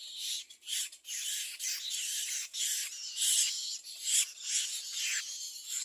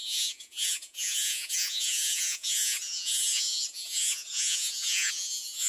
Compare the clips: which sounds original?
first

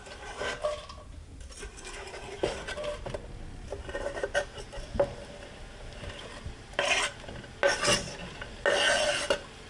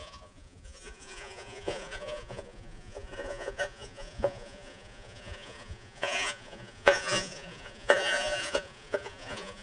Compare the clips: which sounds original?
first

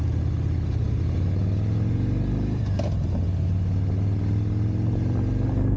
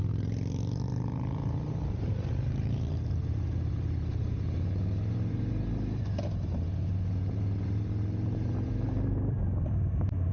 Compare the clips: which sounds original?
first